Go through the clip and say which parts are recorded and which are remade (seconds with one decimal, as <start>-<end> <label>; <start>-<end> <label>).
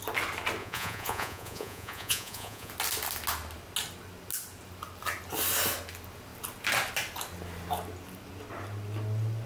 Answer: 0.0-0.6 recorded; 0.6-2.7 remade; 2.7-9.5 recorded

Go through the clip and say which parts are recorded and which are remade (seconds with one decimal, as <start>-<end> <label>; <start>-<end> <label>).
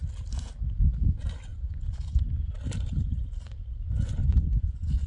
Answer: 0.0-1.5 recorded; 1.5-2.2 remade; 2.2-4.2 recorded; 4.2-5.1 remade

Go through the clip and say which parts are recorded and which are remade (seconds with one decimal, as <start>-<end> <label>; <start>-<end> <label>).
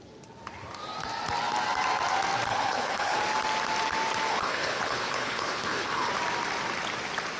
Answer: 0.0-2.5 recorded; 2.5-3.2 remade; 3.2-4.3 recorded; 4.3-6.1 remade; 6.1-7.4 recorded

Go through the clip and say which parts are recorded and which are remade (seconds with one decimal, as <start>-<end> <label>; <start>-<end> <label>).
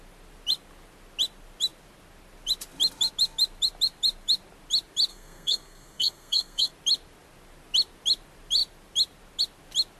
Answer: 0.0-5.1 recorded; 5.1-6.7 remade; 6.7-10.0 recorded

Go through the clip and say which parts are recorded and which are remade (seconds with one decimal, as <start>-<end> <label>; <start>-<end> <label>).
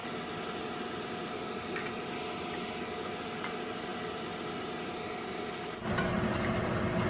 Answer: 0.0-7.1 recorded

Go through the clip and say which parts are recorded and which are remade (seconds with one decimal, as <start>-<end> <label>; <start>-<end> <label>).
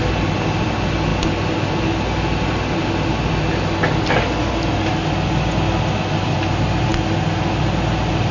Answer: 0.0-8.3 recorded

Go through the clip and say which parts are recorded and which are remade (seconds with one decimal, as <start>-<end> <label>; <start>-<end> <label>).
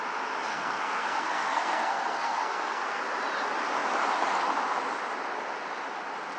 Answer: 0.0-0.5 recorded; 0.5-3.0 remade; 3.0-6.4 recorded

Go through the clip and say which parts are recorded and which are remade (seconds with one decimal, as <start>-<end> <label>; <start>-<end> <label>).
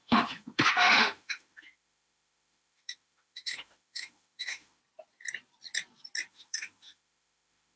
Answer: 0.0-4.8 remade; 4.8-6.3 recorded; 6.3-7.8 remade